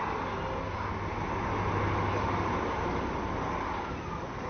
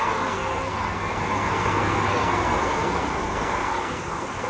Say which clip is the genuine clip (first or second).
first